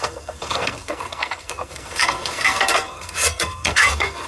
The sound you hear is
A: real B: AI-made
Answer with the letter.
B